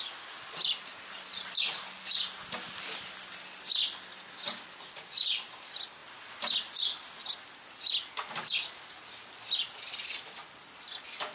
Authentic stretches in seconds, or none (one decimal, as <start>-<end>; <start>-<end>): 0.0-11.3